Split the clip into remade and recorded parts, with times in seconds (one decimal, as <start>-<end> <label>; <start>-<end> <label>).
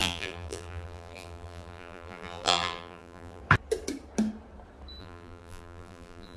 0.0-3.4 remade; 3.4-5.0 recorded; 5.0-6.4 remade